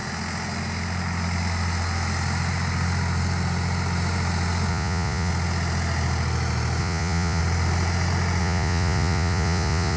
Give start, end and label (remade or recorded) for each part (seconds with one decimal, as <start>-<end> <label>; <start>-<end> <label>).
0.0-4.7 recorded; 4.7-5.3 remade; 5.3-6.8 recorded; 6.8-7.4 remade; 7.4-8.4 recorded; 8.4-10.0 remade